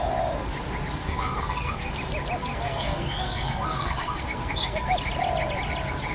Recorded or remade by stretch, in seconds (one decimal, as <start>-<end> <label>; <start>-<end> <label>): 0.0-1.0 recorded; 1.0-1.9 remade; 1.9-2.4 recorded; 2.4-4.9 remade; 4.9-6.1 recorded